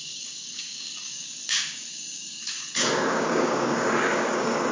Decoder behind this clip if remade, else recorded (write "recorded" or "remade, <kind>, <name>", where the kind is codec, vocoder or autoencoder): remade, codec, DAC